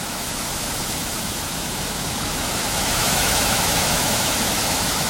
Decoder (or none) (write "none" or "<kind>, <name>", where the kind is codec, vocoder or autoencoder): autoencoder, DAC-VAE